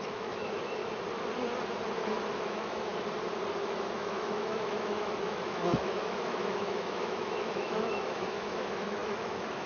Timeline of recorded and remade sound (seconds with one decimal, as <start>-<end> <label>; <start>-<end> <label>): 0.0-0.8 remade; 0.8-2.4 recorded; 2.4-2.9 remade; 2.9-3.6 recorded; 3.6-9.7 remade